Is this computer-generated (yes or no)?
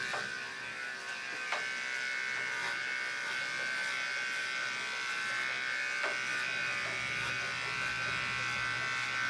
no